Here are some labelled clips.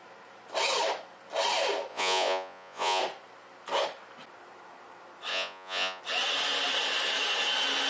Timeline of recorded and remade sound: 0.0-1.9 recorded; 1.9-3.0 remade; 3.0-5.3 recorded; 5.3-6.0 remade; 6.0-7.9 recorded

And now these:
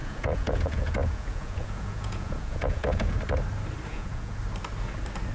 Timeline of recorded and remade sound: 0.0-3.2 remade; 3.2-3.9 recorded; 3.9-4.4 remade; 4.4-5.3 recorded

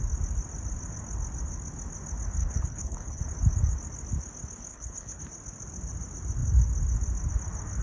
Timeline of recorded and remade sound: 0.0-2.4 recorded; 2.4-3.2 remade; 3.2-4.7 recorded; 4.7-5.2 remade; 5.2-7.8 recorded